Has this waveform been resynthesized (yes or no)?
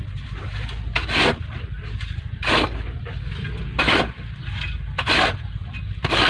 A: no